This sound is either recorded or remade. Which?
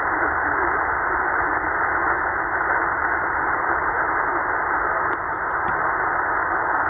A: recorded